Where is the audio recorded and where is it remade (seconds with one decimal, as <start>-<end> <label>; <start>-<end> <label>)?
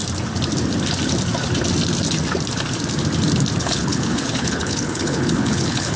0.0-3.6 recorded; 3.6-6.0 remade